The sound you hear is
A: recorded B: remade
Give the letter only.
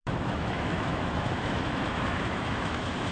B